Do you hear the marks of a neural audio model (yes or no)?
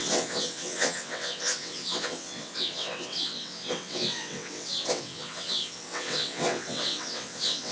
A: yes